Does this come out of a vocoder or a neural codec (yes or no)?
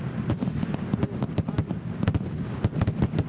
no